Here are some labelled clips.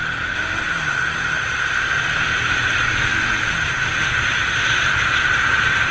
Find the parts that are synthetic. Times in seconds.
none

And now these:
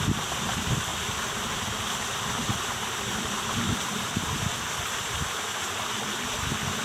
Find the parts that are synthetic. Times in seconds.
none